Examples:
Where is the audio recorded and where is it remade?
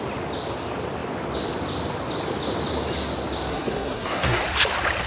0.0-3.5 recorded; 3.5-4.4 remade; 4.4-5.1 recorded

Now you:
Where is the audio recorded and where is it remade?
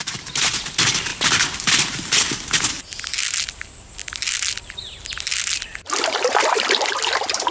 0.0-7.5 recorded